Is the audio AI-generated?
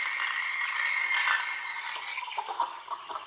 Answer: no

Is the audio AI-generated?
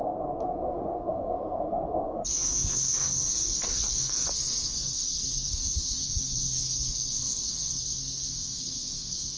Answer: yes